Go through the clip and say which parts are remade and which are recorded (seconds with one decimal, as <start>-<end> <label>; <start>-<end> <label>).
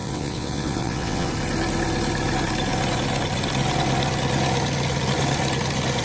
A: 0.0-1.3 remade; 1.3-6.0 recorded